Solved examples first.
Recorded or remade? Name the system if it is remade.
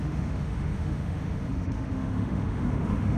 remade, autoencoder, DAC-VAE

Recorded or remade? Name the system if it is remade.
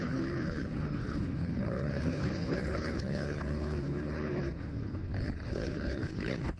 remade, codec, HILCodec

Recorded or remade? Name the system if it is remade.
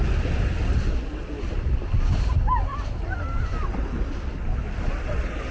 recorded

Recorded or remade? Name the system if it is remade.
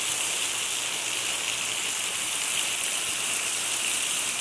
recorded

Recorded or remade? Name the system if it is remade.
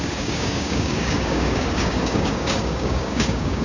remade, codec, DAC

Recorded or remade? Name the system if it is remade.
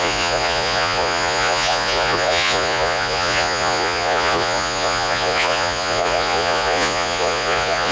remade, vocoder, Vocos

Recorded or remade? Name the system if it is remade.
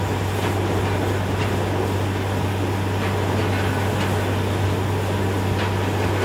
recorded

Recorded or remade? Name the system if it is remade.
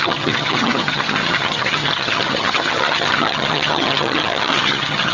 remade, vocoder, HiFi-GAN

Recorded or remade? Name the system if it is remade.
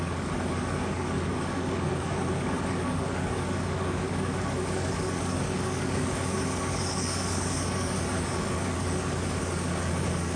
remade, codec, DAC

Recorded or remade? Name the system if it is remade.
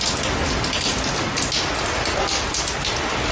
recorded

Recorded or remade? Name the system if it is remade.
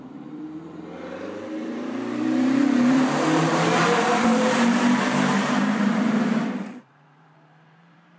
remade, vocoder, BigVGAN v2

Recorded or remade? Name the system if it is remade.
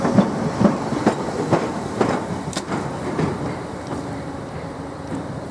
recorded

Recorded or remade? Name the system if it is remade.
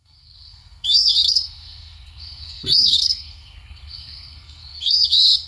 remade, codec, SNAC